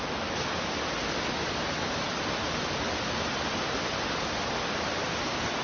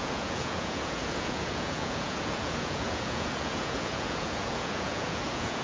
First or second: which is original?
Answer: first